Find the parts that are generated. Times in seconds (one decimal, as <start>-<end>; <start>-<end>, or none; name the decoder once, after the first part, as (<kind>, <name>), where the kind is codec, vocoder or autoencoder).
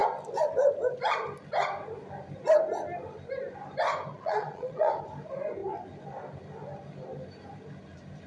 4.1-4.9 (vocoder, Vocos)